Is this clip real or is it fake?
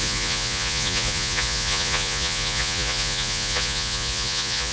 fake